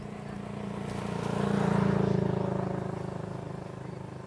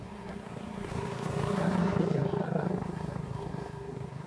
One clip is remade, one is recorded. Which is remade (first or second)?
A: second